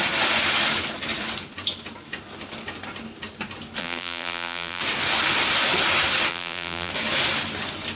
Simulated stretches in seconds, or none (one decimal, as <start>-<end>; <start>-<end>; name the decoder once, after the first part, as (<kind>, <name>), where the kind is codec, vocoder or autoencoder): 3.8-4.8 (vocoder, BigVGAN v2); 6.3-6.9